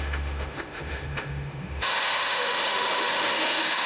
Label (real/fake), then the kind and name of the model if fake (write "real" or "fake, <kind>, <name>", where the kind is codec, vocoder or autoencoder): fake, autoencoder, DAC-VAE